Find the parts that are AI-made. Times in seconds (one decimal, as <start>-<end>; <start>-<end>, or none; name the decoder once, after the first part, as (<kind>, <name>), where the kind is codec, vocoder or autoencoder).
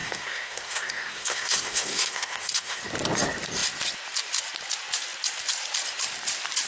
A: 0.0-2.8 (codec, SNAC)